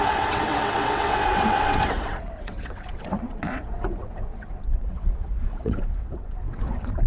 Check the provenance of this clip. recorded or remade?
remade